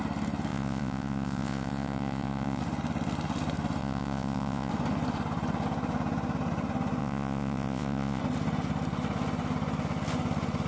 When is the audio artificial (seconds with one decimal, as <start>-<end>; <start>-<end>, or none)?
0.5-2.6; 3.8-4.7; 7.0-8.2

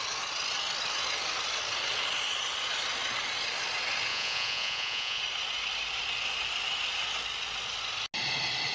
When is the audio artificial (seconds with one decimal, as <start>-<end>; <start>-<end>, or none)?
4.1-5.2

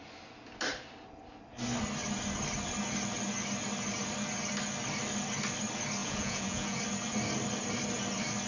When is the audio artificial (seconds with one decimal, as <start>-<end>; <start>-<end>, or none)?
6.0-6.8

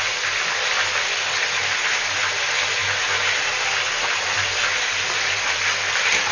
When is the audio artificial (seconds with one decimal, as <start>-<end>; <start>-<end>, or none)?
none

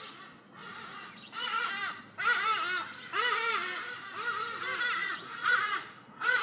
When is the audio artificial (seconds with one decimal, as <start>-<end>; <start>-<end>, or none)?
0.6-1.7; 5.0-6.4

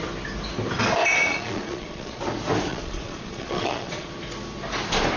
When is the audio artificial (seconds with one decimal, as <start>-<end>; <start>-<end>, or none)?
1.2-2.2; 2.7-4.1

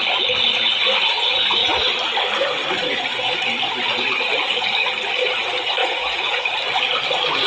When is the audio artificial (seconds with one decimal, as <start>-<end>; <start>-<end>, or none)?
5.8-6.4

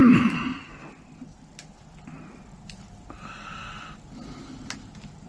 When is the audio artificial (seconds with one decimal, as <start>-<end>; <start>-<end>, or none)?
none